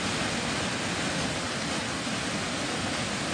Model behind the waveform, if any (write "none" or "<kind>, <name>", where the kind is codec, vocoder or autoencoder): none